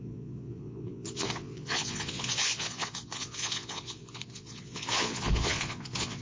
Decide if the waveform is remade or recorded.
remade